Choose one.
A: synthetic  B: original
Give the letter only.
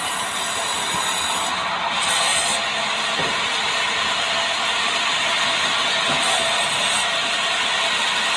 B